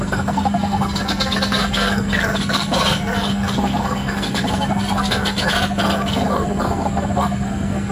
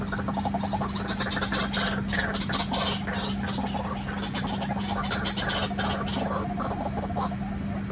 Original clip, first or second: second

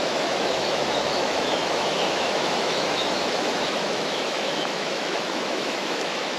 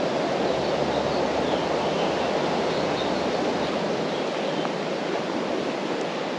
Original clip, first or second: second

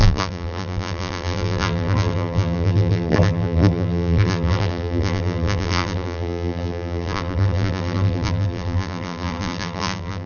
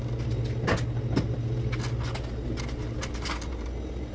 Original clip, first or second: second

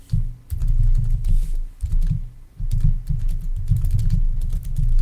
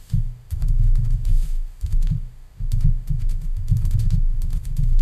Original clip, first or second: first